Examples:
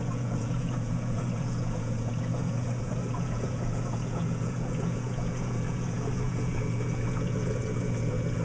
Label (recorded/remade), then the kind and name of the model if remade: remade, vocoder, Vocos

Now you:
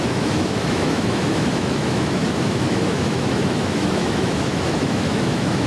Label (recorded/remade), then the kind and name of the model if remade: remade, autoencoder, DAC-VAE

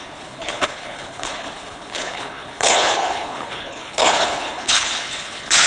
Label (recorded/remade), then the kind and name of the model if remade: remade, codec, HILCodec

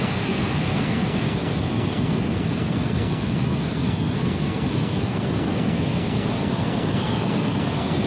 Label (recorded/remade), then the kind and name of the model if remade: remade, codec, SNAC